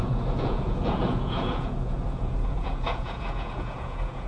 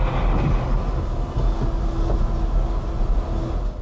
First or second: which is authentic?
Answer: second